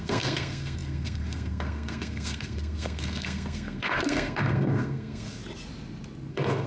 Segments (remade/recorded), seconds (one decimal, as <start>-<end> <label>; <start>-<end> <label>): 0.0-5.4 remade; 5.4-6.3 recorded; 6.3-6.7 remade